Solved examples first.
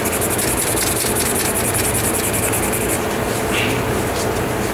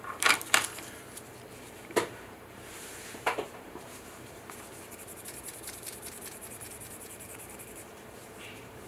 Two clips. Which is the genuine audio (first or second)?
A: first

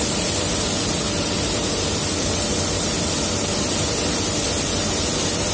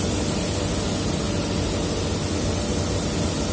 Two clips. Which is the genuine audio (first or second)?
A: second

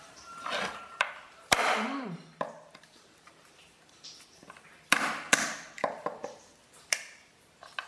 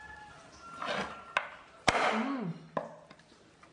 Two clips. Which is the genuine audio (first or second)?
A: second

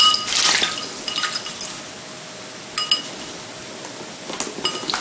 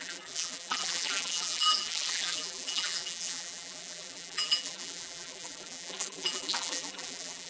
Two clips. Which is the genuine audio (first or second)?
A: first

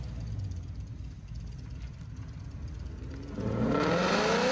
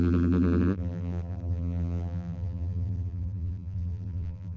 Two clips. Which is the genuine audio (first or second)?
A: first